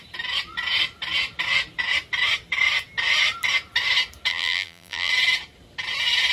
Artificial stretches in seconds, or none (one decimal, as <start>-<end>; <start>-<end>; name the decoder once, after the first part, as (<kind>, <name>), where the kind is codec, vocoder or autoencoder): 4.3-5.1 (vocoder, BigVGAN v2)

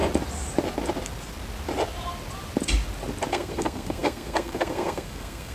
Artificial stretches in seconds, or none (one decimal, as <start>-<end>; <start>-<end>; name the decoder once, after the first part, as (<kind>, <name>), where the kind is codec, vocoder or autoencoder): 3.3-5.5 (codec, SNAC)

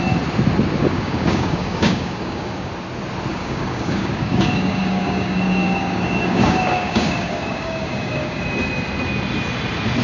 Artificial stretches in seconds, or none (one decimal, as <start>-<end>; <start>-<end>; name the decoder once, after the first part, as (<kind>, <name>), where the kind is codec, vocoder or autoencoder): 0.8-2.7 (codec, DAC); 3.3-8.4

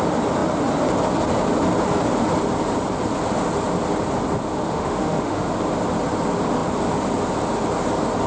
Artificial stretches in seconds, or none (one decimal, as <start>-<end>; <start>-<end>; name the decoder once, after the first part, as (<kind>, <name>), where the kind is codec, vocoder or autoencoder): 4.5-5.5 (autoencoder, DAC-VAE)

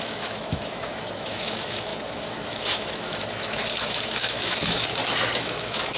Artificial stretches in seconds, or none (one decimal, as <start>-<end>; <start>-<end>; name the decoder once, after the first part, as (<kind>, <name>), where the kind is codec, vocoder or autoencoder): 0.0-4.9 (autoencoder, DAC-VAE); 5.4-6.0

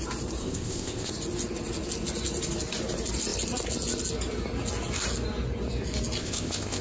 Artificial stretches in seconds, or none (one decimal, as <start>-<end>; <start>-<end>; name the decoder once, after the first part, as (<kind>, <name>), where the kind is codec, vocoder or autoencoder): 0.4-1.1 (codec, ZipCodec); 6.2-6.8

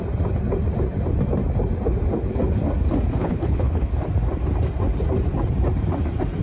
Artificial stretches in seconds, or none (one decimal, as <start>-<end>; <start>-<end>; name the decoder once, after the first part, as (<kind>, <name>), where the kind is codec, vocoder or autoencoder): 3.2-3.9 (codec, HILCodec)

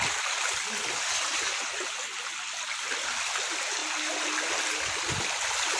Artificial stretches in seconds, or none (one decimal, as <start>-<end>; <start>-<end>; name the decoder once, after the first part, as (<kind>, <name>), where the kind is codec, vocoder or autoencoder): none